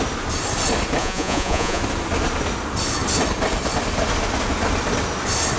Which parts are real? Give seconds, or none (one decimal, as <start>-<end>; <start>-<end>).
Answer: 0.0-1.0; 1.8-5.6